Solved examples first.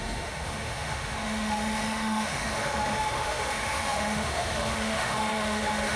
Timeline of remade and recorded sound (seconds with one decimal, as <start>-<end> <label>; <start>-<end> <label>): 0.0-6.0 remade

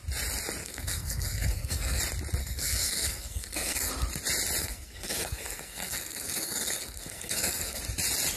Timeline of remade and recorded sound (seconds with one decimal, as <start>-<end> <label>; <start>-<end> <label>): 0.0-0.6 recorded; 0.6-2.0 remade; 2.0-2.4 recorded; 2.4-3.9 remade; 3.9-4.6 recorded; 4.6-7.8 remade; 7.8-8.4 recorded

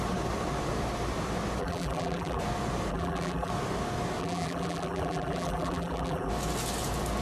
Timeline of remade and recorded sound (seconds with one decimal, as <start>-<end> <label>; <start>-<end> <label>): 0.0-1.6 recorded; 1.6-2.4 remade; 2.4-2.9 recorded; 2.9-3.5 remade; 3.5-4.2 recorded; 4.2-6.3 remade; 6.3-7.2 recorded

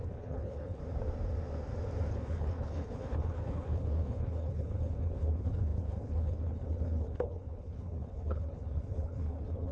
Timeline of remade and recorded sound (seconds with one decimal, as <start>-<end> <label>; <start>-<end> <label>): 0.0-0.8 remade; 0.8-2.1 recorded; 2.1-9.7 remade

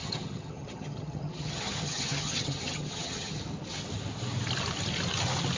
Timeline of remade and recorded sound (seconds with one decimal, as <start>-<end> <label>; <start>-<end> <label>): 0.0-3.4 remade; 3.4-5.6 recorded

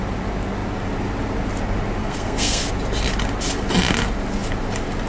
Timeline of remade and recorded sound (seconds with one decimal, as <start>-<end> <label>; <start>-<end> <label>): 0.0-2.0 recorded; 2.0-2.6 remade; 2.6-5.1 recorded

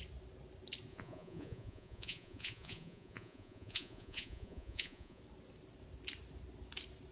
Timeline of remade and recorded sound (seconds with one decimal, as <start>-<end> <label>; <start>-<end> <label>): 0.0-0.9 recorded; 0.9-5.2 remade; 5.2-7.1 recorded

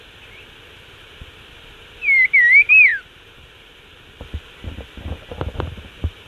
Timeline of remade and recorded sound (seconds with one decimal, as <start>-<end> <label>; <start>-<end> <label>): 0.0-6.3 recorded